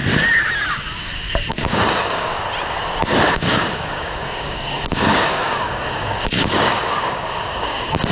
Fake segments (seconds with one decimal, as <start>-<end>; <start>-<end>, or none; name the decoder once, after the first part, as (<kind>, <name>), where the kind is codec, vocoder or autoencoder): 0.7-2.3 (codec, DAC); 3.3-8.1